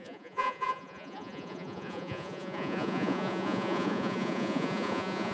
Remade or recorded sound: remade